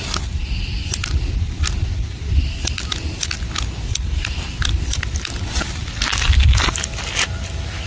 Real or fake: real